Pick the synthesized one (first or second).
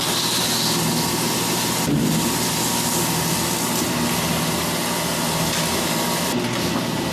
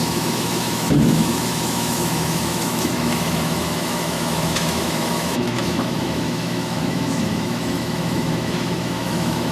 second